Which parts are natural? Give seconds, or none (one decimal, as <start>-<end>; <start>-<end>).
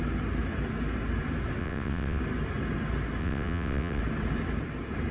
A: 0.0-1.6; 2.2-3.2; 4.0-5.1